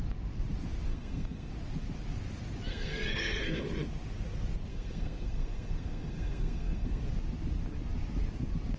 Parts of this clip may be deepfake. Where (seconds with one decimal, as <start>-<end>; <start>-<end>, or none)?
0.9-1.5; 2.7-3.6; 4.7-7.0